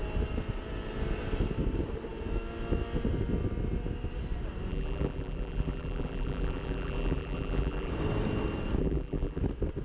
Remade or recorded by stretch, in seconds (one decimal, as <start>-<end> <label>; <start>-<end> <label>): 0.0-4.7 recorded; 4.7-7.9 remade; 7.9-8.8 recorded; 8.8-9.4 remade; 9.4-9.8 recorded